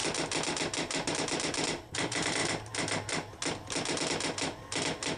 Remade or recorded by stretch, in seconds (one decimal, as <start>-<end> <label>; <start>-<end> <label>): 0.0-1.9 recorded; 1.9-2.4 remade; 2.4-5.2 recorded